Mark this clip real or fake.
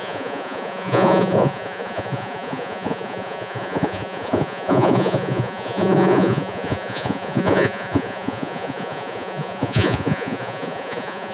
fake